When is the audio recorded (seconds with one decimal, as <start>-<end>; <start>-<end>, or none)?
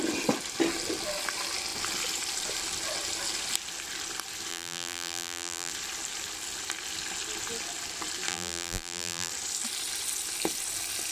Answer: 0.0-4.5; 5.7-8.3; 9.3-11.1